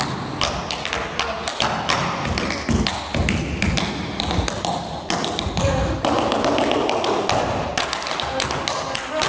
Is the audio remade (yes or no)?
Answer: no